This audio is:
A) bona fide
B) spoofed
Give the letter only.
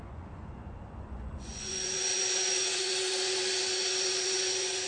B